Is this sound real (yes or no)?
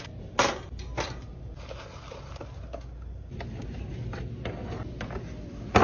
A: yes